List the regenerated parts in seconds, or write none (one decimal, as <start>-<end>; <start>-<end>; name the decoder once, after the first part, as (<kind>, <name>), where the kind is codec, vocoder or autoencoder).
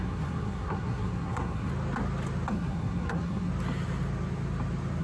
0.0-1.7 (codec, SNAC); 2.5-3.5